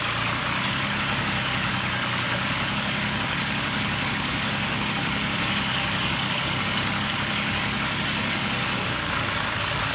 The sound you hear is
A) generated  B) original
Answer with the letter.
A